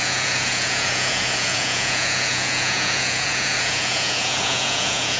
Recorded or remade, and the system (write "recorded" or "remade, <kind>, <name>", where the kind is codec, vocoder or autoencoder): remade, vocoder, Vocos